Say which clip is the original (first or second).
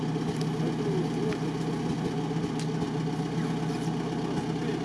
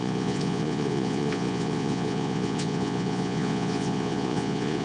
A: first